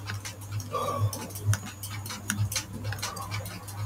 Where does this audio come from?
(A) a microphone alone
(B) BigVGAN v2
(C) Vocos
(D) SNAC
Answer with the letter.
A